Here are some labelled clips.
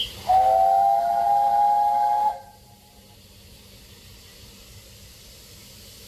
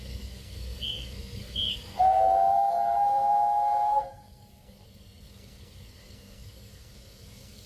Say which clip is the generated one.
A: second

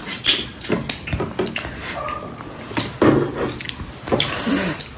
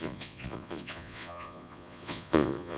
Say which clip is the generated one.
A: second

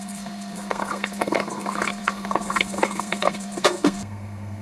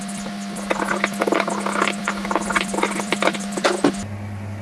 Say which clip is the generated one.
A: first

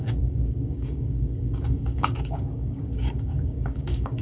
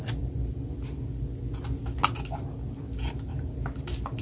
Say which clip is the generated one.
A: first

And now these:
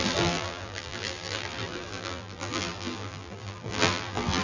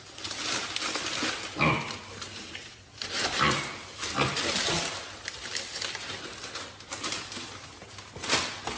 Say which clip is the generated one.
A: first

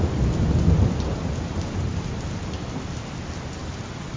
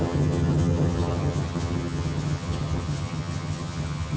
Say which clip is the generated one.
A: second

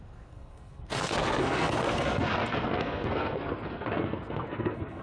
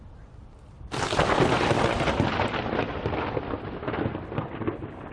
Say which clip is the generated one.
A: first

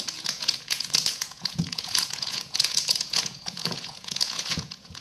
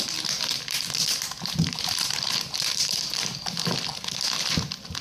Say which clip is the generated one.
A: first